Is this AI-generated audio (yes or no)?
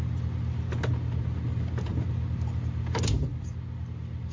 no